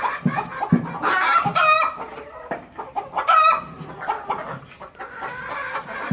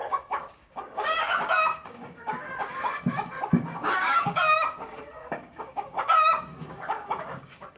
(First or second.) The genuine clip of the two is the first